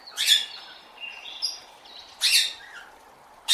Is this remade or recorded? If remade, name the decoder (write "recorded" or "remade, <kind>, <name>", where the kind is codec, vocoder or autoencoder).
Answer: recorded